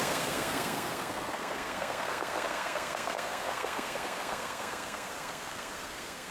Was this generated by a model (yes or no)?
yes